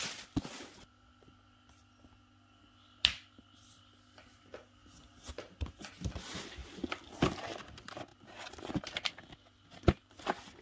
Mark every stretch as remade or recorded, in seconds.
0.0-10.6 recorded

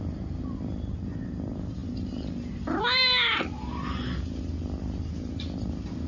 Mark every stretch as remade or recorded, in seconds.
0.0-6.1 recorded

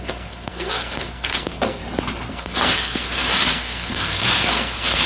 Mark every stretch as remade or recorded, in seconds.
0.0-1.8 remade; 1.8-2.3 recorded; 2.3-5.1 remade

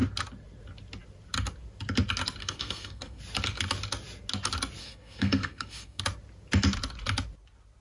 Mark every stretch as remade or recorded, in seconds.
0.0-2.4 recorded; 2.4-3.2 remade; 3.2-4.8 recorded; 4.8-6.0 remade; 6.0-7.8 recorded

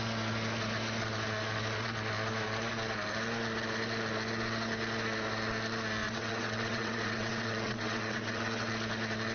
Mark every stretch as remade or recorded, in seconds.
0.0-6.0 recorded; 6.0-8.7 remade; 8.7-9.3 recorded

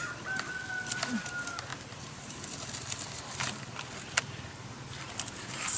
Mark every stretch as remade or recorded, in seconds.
0.0-1.7 recorded; 1.7-3.4 remade; 3.4-5.8 recorded

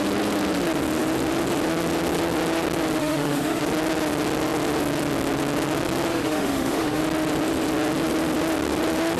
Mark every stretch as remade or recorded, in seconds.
0.0-3.0 recorded; 3.0-3.6 remade; 3.6-6.1 recorded; 6.1-7.0 remade; 7.0-9.2 recorded

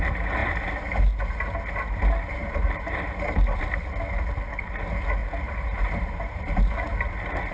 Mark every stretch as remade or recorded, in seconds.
0.0-2.4 recorded; 2.4-3.6 remade; 3.6-5.2 recorded; 5.2-6.7 remade; 6.7-7.5 recorded